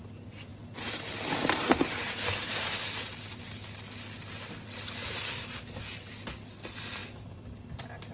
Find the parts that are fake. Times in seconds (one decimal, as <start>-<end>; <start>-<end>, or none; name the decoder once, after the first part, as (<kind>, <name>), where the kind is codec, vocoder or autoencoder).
none

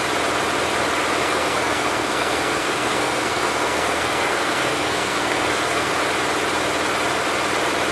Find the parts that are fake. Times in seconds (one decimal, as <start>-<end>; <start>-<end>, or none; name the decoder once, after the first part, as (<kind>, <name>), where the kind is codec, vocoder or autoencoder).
1.2-5.9 (codec, SNAC)

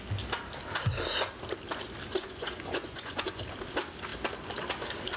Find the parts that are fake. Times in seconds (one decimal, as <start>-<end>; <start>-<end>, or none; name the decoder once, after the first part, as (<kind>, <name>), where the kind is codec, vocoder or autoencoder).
2.1-3.4 (vocoder, Vocos)

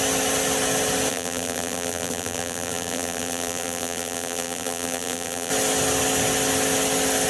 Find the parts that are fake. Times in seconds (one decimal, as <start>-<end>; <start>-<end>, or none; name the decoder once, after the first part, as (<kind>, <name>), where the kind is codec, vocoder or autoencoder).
1.1-5.5 (vocoder, BigVGAN v2)

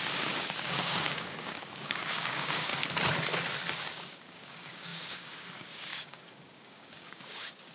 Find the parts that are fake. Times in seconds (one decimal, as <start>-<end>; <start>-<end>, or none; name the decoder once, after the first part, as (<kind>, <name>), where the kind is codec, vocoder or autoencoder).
0.0-2.7 (codec, DAC); 3.8-7.7

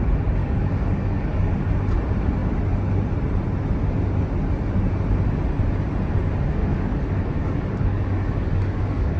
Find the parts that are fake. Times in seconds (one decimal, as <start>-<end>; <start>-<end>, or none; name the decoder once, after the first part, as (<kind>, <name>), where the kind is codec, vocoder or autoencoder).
0.4-1.7 (codec, DAC); 6.6-9.2

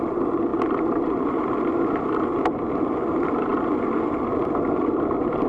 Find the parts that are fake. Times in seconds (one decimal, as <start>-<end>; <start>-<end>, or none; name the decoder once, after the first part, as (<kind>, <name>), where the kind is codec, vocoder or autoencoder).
none